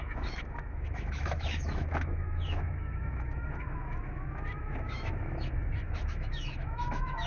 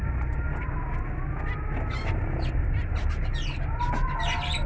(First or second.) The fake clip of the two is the first